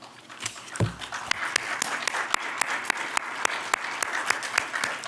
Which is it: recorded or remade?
recorded